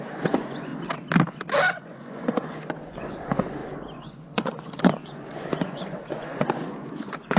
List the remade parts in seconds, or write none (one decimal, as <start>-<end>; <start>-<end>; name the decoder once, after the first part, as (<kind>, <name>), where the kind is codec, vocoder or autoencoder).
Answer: 0.0-0.7 (vocoder, Vocos); 1.8-7.4